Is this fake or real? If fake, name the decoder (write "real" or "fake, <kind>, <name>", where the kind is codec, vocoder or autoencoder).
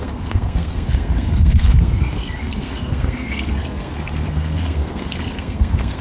fake, codec, SNAC